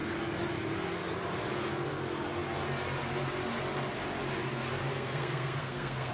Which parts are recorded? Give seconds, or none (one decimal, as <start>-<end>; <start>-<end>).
0.0-4.9

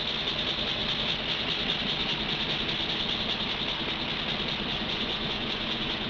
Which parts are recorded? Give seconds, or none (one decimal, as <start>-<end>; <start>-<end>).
0.0-4.7

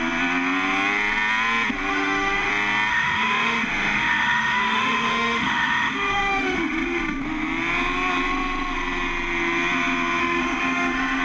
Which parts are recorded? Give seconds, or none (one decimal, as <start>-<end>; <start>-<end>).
0.0-1.9; 2.5-2.9; 7.2-10.2

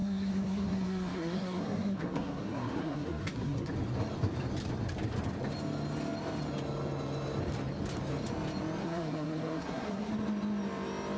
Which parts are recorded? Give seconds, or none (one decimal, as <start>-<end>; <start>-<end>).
3.7-8.8; 10.1-11.2

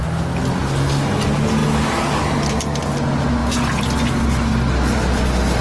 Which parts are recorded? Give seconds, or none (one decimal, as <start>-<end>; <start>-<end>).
0.0-5.6